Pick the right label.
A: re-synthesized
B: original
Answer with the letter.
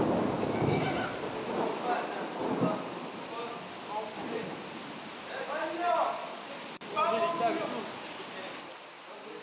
B